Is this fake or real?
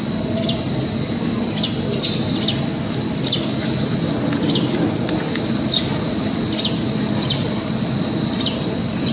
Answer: real